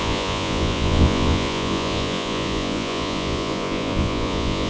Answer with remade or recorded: remade